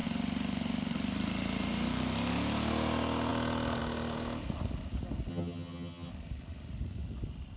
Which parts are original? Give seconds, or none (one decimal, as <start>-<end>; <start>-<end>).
0.0-5.3; 6.1-7.6